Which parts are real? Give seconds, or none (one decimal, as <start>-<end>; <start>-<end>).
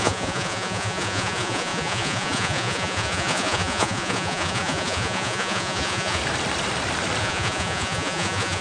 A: 6.2-7.2